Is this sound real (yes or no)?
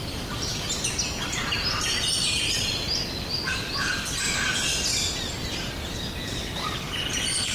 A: yes